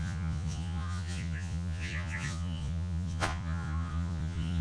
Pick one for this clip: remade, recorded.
remade